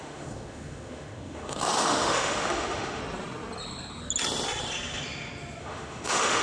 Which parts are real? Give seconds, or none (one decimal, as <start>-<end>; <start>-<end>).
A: 3.0-5.6